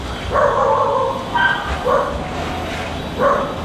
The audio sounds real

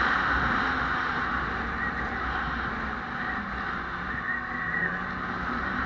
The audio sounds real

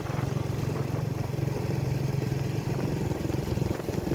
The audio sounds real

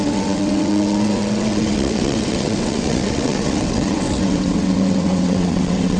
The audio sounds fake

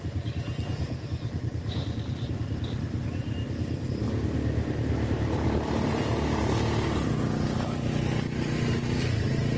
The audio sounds real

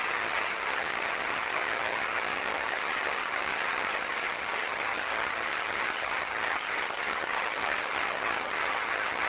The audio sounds fake